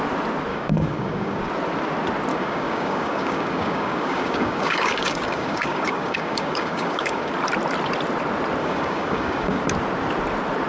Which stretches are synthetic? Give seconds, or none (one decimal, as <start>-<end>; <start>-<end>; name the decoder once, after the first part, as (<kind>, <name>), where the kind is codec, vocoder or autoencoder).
0.5-1.5 (codec, DAC); 2.3-7.3; 8.6-9.6